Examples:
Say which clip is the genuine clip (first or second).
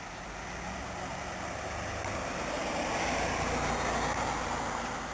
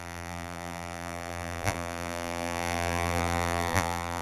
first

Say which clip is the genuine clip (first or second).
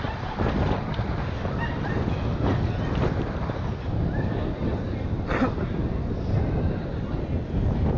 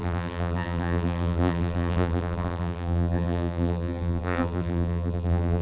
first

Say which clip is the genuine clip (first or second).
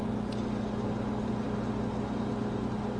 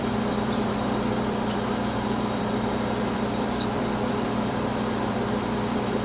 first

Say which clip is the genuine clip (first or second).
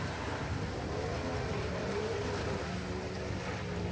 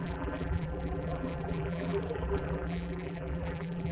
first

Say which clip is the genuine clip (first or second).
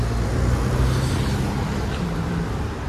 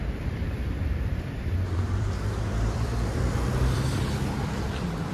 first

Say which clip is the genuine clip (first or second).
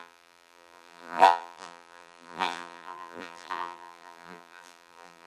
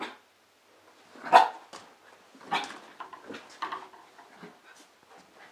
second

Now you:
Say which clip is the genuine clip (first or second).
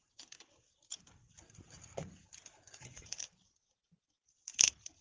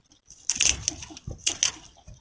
second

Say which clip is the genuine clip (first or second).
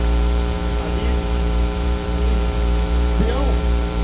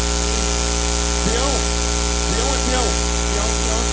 second